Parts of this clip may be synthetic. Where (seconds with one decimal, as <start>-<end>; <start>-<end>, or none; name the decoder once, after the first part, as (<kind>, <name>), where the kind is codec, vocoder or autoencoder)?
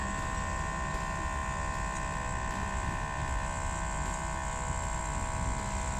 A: none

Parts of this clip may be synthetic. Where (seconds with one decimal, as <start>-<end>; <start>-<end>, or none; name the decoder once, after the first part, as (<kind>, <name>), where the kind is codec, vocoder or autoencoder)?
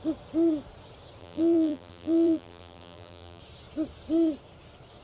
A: 1.2-3.4 (vocoder, BigVGAN v2)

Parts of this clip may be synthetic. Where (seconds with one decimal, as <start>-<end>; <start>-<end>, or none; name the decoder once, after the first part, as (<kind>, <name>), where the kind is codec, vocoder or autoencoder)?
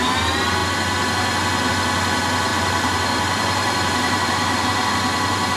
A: 2.5-5.6 (vocoder, BigVGAN v2)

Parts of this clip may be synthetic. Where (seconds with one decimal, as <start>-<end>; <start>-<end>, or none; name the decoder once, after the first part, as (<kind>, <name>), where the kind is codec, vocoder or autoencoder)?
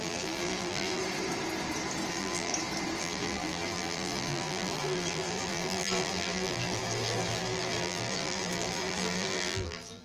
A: 0.0-1.0 (vocoder, BigVGAN v2); 2.1-2.5; 3.0-10.0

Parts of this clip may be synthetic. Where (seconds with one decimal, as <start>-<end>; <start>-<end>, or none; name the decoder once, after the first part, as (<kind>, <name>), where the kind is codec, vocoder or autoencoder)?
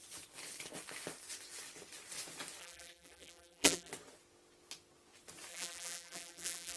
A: 2.6-3.9 (vocoder, BigVGAN v2); 5.5-6.8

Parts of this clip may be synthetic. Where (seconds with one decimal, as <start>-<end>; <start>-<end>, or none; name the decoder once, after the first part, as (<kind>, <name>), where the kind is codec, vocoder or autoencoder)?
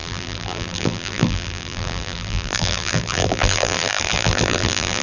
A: 0.0-5.0 (vocoder, BigVGAN v2)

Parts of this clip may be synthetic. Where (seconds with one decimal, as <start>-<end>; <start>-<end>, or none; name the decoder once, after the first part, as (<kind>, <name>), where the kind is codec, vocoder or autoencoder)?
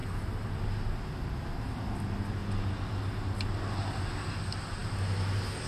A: 0.0-0.5 (vocoder, BigVGAN v2)